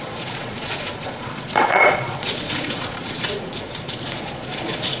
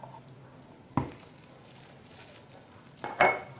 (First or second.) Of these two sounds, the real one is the second